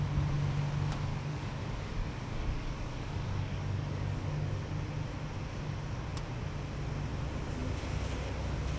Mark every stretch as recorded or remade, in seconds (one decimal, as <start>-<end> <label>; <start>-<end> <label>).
0.0-1.1 recorded; 1.1-4.7 remade; 4.7-8.8 recorded

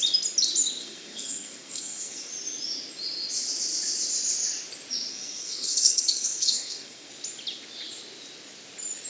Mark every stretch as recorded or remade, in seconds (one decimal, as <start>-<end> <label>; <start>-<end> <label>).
0.0-0.8 recorded; 0.8-2.3 remade; 2.3-5.1 recorded; 5.1-7.1 remade; 7.1-9.1 recorded

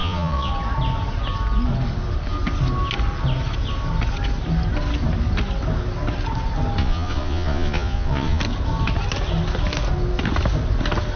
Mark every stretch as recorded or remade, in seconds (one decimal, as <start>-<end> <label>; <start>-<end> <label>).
0.0-0.5 remade; 0.5-6.8 recorded; 6.8-8.4 remade; 8.4-11.2 recorded

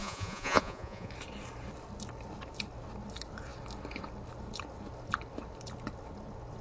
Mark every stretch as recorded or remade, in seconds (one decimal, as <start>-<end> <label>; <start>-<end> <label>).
0.0-1.1 remade; 1.1-6.6 recorded